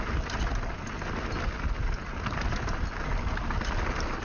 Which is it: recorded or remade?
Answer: recorded